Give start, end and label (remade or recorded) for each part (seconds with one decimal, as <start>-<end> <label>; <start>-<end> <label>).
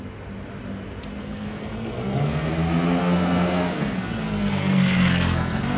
0.0-1.2 recorded; 1.2-2.5 remade; 2.5-3.0 recorded; 3.0-5.8 remade